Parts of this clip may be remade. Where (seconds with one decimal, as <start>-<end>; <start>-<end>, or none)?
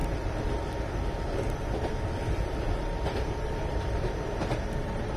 2.8-5.2